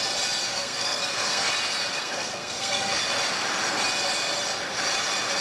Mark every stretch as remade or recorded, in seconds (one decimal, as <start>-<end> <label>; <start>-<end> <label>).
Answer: 0.0-0.5 recorded; 0.5-1.5 remade; 1.5-1.9 recorded; 1.9-3.0 remade; 3.0-5.4 recorded